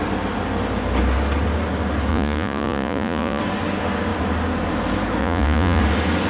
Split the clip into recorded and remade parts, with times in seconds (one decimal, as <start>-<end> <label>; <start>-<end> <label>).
0.0-2.1 recorded; 2.1-3.4 remade; 3.4-5.2 recorded; 5.2-5.8 remade; 5.8-6.3 recorded